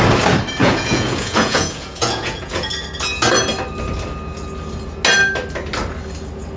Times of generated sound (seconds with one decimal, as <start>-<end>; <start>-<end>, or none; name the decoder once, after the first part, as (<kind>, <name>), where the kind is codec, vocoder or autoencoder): 0.6-2.7 (vocoder, Vocos)